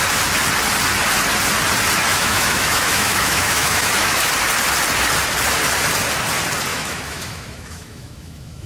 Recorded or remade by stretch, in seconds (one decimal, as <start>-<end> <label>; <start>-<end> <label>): 0.0-2.1 recorded; 2.1-4.3 remade; 4.3-6.7 recorded; 6.7-8.7 remade